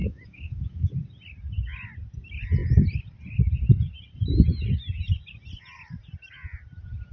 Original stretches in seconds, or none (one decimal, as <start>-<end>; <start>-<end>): 0.9-7.1